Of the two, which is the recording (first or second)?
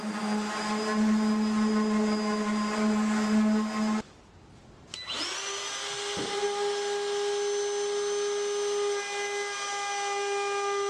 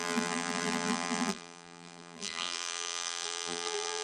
first